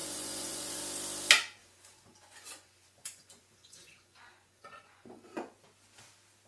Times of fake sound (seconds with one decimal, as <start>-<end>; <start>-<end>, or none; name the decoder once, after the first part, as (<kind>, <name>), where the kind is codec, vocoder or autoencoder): 0.0-0.8 (vocoder, Vocos); 1.6-5.5

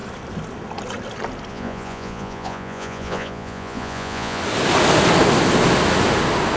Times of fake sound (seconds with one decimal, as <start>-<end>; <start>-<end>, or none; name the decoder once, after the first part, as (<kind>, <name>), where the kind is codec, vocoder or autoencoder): 1.5-4.4 (vocoder, Vocos)

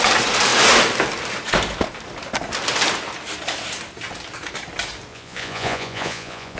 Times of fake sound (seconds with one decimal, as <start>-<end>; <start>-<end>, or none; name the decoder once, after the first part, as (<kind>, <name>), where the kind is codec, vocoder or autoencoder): 5.1-6.6 (vocoder, Vocos)

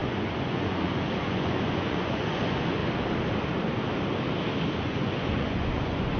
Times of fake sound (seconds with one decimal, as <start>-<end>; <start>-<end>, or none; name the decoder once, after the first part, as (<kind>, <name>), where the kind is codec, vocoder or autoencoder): 0.0-2.8 (vocoder, Vocos); 4.8-6.2

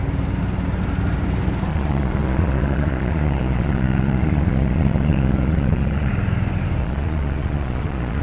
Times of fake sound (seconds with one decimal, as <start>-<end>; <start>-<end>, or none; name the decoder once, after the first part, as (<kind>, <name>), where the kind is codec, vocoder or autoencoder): 1.7-6.1 (vocoder, Vocos); 6.8-8.2